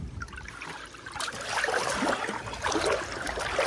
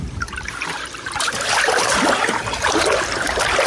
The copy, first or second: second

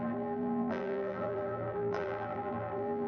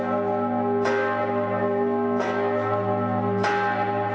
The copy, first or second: first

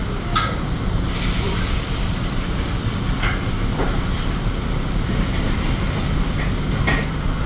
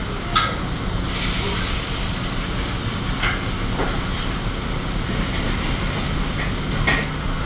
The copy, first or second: first